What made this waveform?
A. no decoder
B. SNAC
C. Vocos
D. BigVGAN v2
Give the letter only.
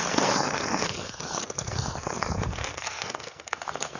B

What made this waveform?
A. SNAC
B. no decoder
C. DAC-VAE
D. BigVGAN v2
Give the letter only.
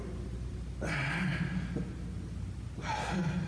B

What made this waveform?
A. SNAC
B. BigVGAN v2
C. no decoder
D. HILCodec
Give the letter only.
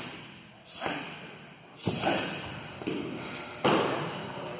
C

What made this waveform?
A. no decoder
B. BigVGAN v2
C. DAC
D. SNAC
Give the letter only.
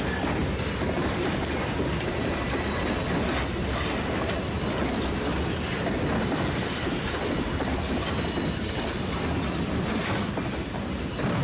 A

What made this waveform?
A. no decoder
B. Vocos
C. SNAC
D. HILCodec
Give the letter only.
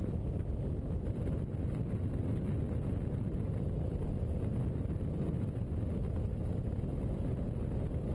A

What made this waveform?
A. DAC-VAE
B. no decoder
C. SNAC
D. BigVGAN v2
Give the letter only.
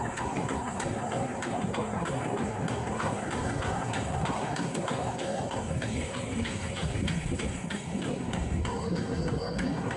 C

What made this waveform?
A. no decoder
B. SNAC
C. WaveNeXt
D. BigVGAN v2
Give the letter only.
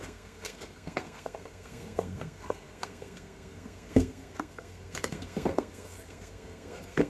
B